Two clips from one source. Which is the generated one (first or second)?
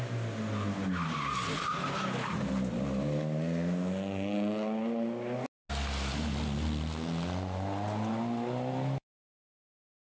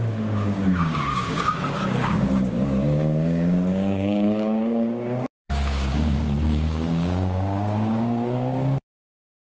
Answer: second